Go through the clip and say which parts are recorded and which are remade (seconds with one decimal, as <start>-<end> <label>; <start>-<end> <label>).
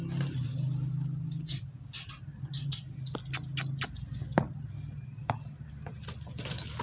0.0-6.8 recorded